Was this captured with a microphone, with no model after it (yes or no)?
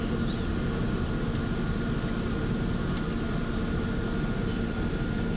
yes